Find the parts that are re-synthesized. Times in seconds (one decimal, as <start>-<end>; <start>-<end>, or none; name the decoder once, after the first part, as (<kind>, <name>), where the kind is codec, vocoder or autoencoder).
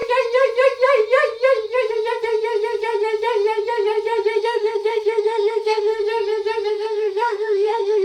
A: 4.4-5.9 (autoencoder, DAC-VAE); 6.7-8.0